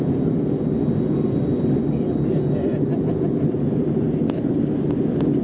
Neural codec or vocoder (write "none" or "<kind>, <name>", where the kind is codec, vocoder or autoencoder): none